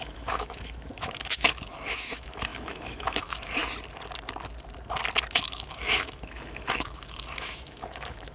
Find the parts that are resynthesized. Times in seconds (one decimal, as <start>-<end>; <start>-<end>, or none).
0.0-3.6; 5.4-8.3